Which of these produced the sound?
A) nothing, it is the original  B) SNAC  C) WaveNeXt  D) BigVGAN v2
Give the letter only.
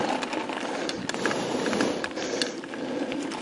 A